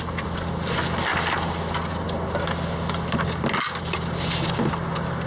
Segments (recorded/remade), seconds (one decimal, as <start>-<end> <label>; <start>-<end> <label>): 0.0-5.3 recorded